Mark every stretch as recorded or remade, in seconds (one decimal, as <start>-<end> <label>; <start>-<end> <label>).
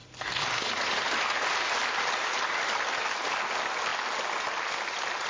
0.0-5.3 recorded